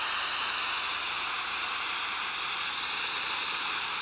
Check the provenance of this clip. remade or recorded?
recorded